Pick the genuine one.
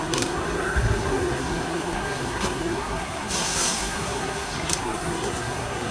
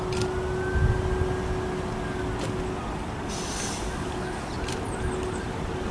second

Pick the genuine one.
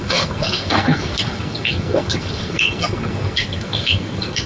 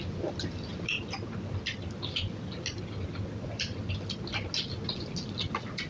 second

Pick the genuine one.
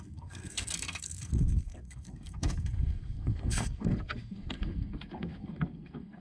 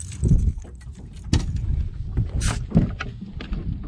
second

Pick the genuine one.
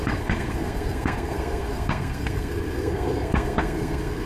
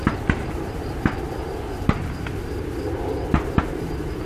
second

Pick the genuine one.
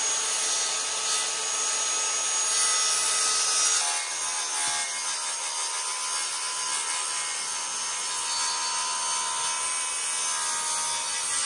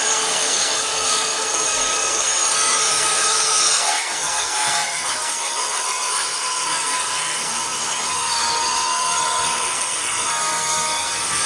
first